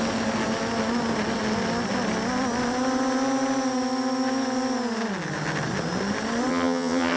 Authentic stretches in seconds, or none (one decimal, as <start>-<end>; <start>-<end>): 0.0-6.5